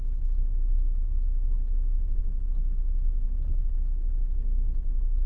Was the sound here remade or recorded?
recorded